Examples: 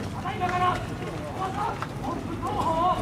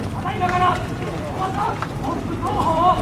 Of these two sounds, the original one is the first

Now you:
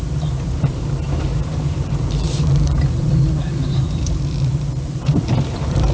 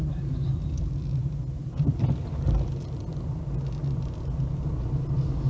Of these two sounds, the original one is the second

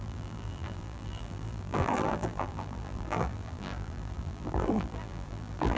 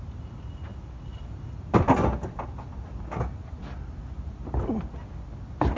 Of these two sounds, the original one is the second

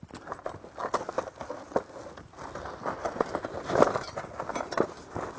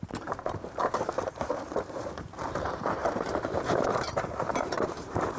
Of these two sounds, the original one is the first